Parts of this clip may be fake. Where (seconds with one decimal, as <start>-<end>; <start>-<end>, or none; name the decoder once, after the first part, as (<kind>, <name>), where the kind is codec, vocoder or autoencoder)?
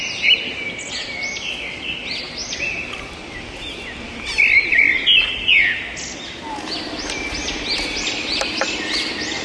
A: none